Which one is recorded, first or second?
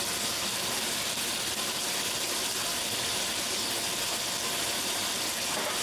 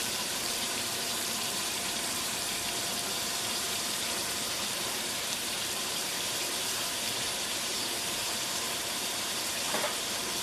first